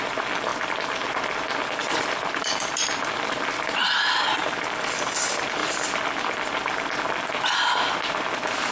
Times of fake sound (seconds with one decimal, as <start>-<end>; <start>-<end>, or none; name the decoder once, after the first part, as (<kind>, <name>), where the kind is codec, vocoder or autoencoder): 1.8-4.0 (vocoder, BigVGAN v2); 5.6-6.3